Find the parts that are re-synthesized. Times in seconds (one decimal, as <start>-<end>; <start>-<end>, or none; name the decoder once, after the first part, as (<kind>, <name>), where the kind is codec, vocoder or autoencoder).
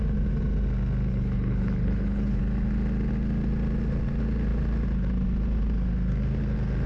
1.1-2.4 (codec, HILCodec)